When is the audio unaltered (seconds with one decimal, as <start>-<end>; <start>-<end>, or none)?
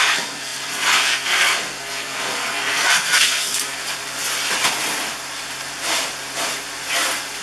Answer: 3.8-7.4